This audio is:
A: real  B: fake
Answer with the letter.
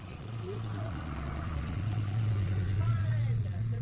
B